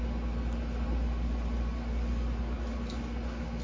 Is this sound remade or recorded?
recorded